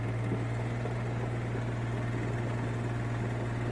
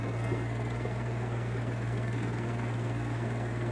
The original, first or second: first